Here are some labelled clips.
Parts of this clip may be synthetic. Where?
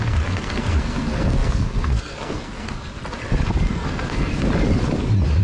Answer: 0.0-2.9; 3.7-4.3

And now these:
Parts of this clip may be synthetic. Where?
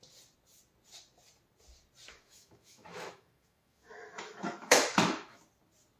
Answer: 2.1-5.4